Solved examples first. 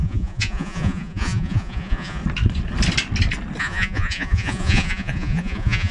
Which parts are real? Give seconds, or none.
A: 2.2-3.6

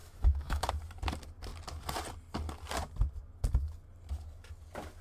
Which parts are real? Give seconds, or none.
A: 0.7-5.0